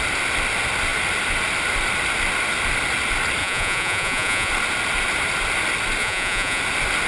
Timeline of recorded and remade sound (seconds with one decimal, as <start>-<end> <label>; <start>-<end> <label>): 0.0-3.4 recorded; 3.4-4.5 remade; 4.5-6.0 recorded; 6.0-6.6 remade; 6.6-7.1 recorded